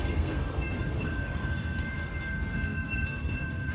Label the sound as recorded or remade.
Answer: remade